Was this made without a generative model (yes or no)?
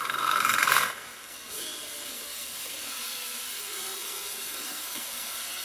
no